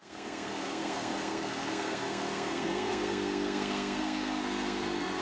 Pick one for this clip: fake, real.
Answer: fake